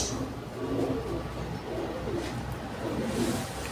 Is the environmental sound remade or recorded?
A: recorded